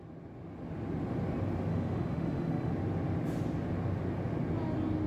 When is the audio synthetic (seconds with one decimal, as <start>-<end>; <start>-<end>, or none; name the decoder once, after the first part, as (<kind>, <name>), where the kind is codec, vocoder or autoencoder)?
1.7-2.7 (autoencoder, DAC-VAE)